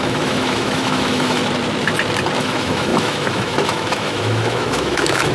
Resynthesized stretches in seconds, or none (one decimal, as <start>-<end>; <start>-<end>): 0.0-1.4; 2.4-5.3

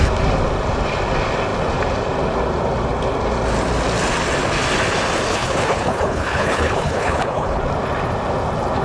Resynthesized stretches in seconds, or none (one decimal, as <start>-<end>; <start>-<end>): 5.3-7.6

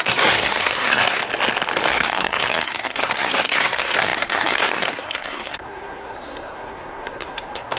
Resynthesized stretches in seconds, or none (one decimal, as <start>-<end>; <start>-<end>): 0.0-1.2; 1.9-7.8